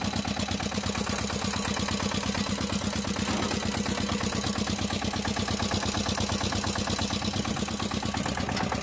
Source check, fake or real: real